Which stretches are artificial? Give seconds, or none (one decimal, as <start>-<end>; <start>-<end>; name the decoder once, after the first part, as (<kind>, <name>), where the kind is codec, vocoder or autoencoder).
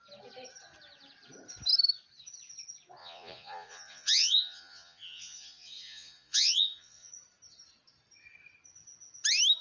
3.0-7.1 (vocoder, Vocos)